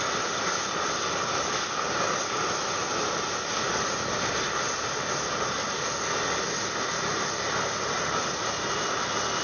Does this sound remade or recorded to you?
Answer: recorded